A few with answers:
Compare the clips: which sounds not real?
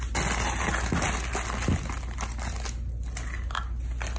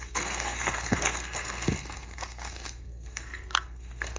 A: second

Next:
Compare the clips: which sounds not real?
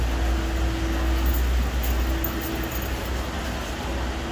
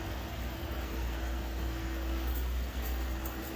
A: second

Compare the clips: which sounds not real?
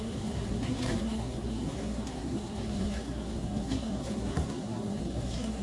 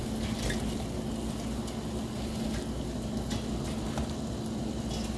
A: first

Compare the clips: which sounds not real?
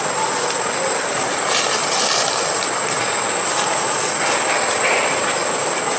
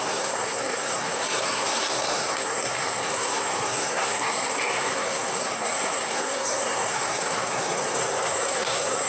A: second